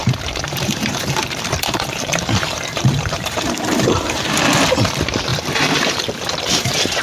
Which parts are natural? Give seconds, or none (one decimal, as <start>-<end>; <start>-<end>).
4.2-5.3